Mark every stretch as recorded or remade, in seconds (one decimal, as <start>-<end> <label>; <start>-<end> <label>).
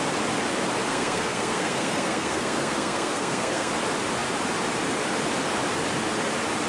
0.0-0.9 recorded; 0.9-3.7 remade; 3.7-6.7 recorded